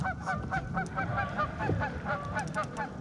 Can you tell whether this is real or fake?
fake